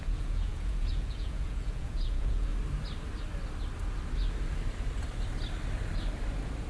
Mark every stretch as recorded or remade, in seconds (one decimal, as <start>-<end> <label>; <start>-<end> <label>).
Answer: 0.0-2.5 remade; 2.5-6.7 recorded